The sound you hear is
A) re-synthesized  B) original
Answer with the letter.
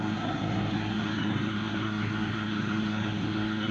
A